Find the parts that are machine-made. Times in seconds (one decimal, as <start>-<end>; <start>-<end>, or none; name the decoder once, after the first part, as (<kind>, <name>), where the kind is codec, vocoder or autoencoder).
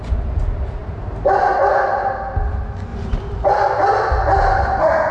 0.8-1.6 (vocoder, BigVGAN v2); 2.9-3.5